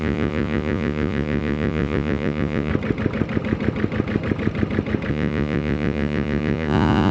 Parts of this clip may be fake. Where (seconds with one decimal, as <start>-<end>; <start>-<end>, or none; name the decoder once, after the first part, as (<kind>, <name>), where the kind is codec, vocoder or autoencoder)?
0.0-2.7 (vocoder, Vocos); 5.1-7.1